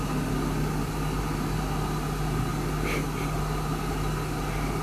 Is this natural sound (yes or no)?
yes